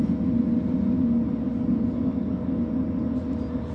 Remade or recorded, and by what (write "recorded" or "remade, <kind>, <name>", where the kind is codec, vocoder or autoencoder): recorded